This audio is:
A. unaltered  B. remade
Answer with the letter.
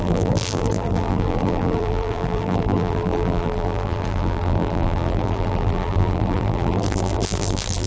B